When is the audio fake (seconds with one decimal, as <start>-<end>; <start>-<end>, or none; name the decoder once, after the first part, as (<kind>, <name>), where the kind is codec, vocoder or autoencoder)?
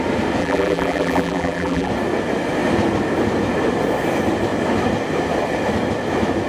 0.4-1.9 (vocoder, BigVGAN v2)